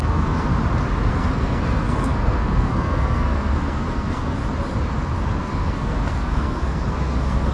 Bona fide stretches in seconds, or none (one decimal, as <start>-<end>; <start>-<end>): 0.5-1.1; 4.4-5.4